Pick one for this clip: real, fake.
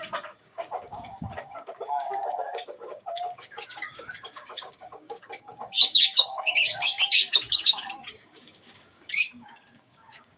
fake